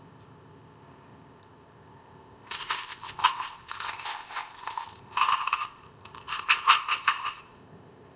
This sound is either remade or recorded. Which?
remade